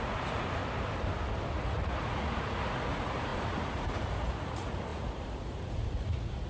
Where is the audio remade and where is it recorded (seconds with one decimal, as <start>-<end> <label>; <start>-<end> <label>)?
0.0-0.6 remade; 0.6-1.6 recorded; 1.6-6.5 remade